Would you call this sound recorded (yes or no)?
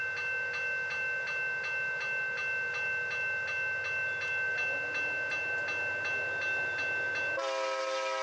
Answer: yes